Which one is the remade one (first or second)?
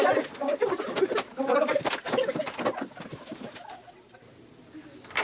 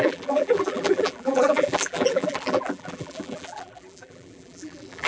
second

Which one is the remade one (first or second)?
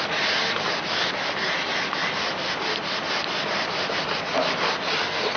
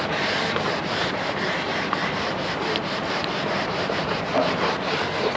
second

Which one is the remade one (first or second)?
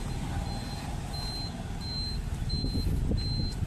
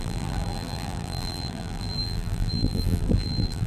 second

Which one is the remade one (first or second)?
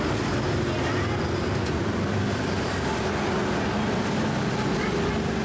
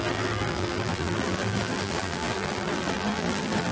second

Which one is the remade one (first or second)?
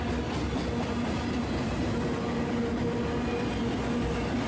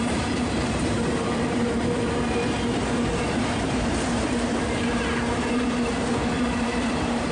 second